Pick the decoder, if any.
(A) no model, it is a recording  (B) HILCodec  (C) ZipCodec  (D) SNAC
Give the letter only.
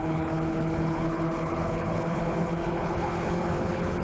B